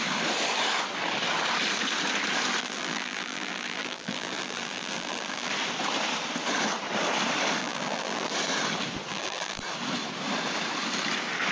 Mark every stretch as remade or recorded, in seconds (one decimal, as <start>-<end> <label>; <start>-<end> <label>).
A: 0.0-2.6 recorded; 2.6-5.5 remade; 5.5-7.6 recorded; 7.6-8.3 remade; 8.3-9.1 recorded; 9.1-9.6 remade; 9.6-11.5 recorded